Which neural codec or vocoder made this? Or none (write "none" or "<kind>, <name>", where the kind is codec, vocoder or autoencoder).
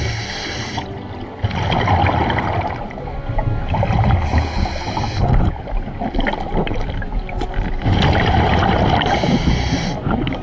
none